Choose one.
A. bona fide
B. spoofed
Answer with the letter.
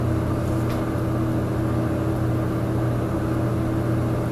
A